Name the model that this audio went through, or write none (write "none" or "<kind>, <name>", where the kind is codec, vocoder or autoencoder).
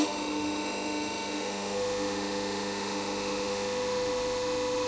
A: autoencoder, DAC-VAE